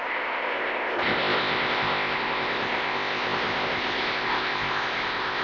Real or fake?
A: fake